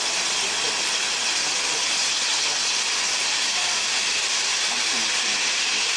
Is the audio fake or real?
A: real